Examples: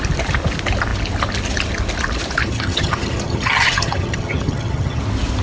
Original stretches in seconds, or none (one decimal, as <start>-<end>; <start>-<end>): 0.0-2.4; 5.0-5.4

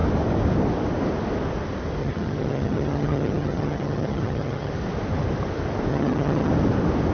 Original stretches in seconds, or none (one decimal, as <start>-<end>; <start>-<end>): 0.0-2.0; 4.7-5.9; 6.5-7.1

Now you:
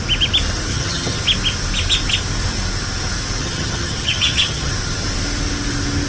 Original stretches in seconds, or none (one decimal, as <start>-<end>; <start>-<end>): 0.0-0.7; 1.2-3.4; 4.7-6.1

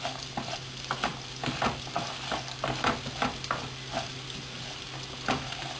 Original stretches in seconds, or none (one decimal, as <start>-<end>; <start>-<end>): 0.0-5.8

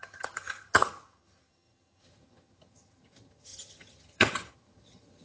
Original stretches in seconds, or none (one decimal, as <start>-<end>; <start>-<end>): none

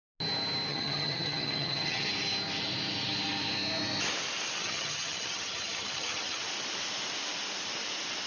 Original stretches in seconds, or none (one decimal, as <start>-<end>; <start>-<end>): 0.0-0.7; 2.1-4.6; 6.4-8.3

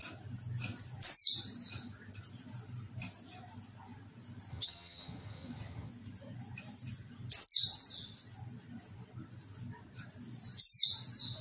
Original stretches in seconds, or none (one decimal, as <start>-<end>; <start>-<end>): 0.0-4.5; 5.9-11.4